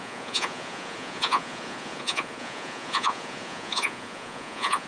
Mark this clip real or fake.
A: fake